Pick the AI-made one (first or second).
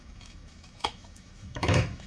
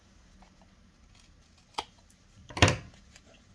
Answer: first